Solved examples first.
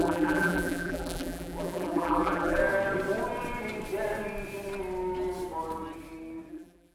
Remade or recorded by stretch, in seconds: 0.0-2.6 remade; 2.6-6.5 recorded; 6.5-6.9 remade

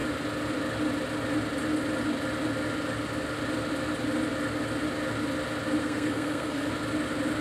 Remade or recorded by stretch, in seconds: 0.0-5.8 recorded; 5.8-6.7 remade; 6.7-7.4 recorded

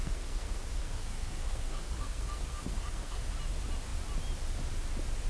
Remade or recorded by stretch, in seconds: 0.0-3.2 remade; 3.2-5.3 recorded

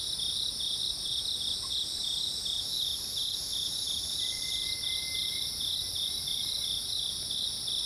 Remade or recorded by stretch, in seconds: 0.0-7.8 recorded

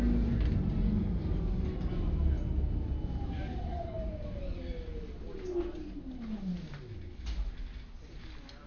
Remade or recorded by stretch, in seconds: 0.0-8.7 recorded